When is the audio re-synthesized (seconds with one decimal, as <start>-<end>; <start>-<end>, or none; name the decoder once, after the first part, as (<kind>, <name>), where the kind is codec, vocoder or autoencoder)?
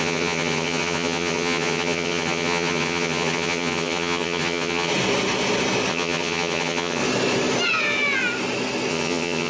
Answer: 0.0-4.9 (vocoder, HiFi-GAN); 5.9-7.0; 8.9-9.5